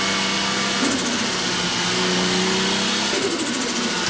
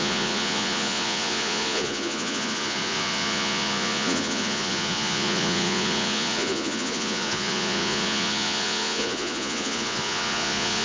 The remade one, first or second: second